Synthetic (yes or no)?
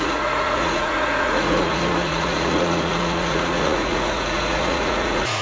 yes